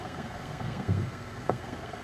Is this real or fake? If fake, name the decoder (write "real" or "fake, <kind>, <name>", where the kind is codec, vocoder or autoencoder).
fake, codec, SNAC